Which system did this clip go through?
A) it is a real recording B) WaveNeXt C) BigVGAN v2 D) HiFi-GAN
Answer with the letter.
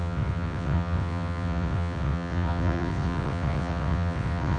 B